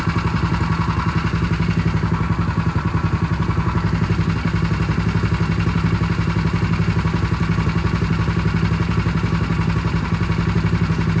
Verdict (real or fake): real